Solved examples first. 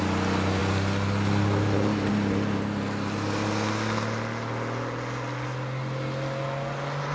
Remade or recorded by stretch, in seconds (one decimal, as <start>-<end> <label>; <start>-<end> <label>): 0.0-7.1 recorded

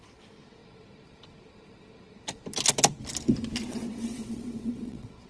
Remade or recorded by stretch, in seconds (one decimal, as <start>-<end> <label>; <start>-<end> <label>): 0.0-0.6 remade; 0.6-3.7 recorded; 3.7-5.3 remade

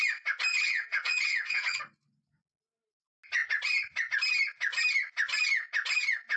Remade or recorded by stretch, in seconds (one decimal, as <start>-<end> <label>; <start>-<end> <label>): 0.0-0.5 recorded; 0.5-1.8 remade; 1.8-6.4 recorded